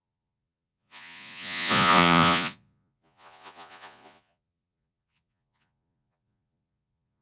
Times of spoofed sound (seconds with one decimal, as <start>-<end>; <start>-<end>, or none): 0.0-7.2